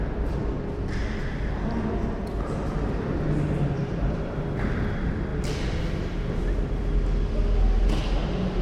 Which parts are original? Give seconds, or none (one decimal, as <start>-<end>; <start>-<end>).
0.0-3.8; 4.6-8.6